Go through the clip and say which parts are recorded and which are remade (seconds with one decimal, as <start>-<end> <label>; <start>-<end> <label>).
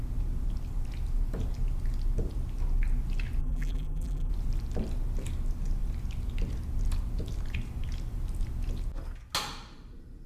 0.0-3.4 recorded; 3.4-4.3 remade; 4.3-10.3 recorded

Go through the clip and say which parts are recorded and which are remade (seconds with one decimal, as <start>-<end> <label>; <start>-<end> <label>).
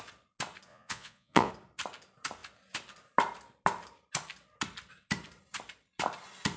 0.0-0.7 recorded; 0.7-1.5 remade; 1.5-6.6 recorded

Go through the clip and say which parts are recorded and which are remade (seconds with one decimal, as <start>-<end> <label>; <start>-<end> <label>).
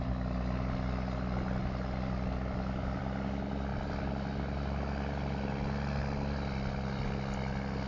0.0-7.9 recorded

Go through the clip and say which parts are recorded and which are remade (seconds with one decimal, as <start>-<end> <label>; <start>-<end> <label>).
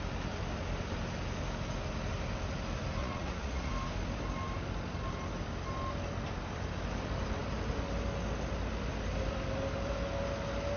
0.0-3.0 recorded; 3.0-3.7 remade; 3.7-10.8 recorded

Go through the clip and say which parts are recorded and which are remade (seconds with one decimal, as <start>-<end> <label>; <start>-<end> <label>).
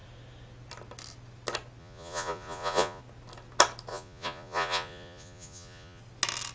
0.0-1.8 recorded; 1.8-3.0 remade; 3.0-3.9 recorded; 3.9-6.0 remade; 6.0-6.5 recorded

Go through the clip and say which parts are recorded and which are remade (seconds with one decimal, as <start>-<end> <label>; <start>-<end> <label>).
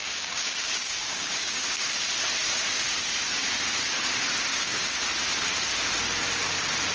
0.0-1.9 remade; 1.9-4.5 recorded; 4.5-5.0 remade; 5.0-6.9 recorded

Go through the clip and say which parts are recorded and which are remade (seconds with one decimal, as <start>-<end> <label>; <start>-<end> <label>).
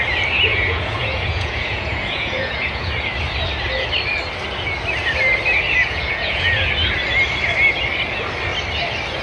0.0-0.5 recorded; 0.5-2.9 remade; 2.9-5.8 recorded; 5.8-6.7 remade; 6.7-9.2 recorded